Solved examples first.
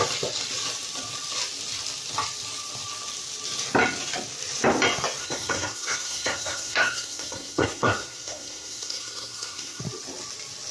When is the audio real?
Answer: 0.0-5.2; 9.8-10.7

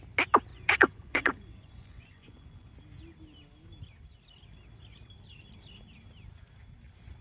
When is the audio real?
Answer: 0.0-0.5; 2.7-7.2

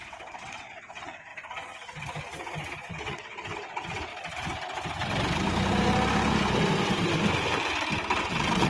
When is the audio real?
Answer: 1.3-2.9; 4.1-8.2

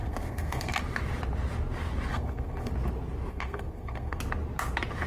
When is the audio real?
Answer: 0.8-2.1; 2.7-3.3; 4.2-5.1

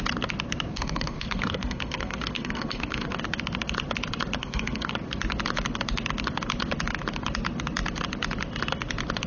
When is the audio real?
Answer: 0.0-0.7; 3.2-4.4; 4.9-9.3

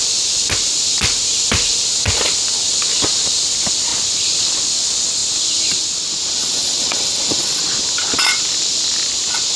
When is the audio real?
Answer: 0.0-6.4; 7.6-9.6